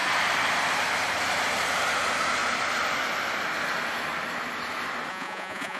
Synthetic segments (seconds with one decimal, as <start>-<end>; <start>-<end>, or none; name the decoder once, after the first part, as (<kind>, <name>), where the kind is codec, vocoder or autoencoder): 5.1-5.8 (vocoder, Vocos)